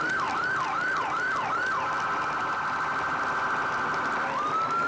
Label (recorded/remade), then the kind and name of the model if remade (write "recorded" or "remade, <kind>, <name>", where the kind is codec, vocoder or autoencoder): recorded